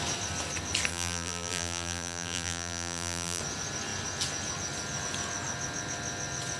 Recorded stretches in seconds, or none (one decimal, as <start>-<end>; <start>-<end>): 0.0-0.9; 3.4-6.6